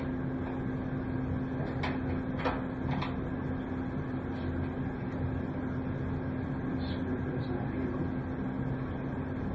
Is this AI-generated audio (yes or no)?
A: no